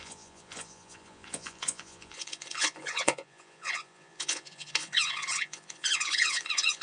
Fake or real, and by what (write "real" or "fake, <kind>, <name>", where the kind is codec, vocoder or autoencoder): fake, vocoder, Vocos